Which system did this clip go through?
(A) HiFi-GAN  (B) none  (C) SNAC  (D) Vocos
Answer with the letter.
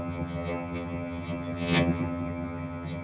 A